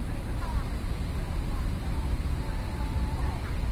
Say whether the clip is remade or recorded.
remade